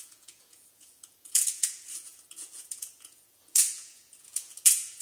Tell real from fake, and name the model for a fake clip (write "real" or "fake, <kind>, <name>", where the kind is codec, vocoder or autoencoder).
fake, vocoder, Vocos